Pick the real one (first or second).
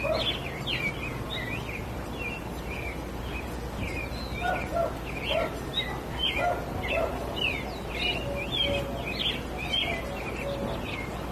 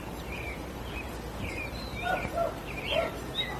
first